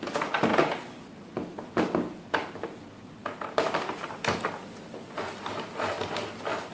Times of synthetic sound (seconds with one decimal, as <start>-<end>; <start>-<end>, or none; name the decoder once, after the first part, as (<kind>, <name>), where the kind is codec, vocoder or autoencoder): none